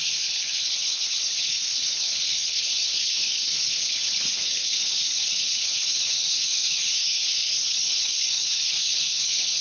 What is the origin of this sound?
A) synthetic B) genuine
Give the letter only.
A